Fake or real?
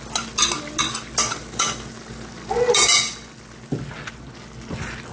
real